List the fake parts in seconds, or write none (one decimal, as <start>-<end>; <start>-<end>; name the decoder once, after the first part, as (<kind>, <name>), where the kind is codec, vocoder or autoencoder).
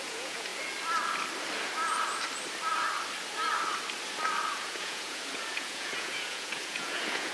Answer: 0.0-0.5 (vocoder, Vocos); 4.5-7.3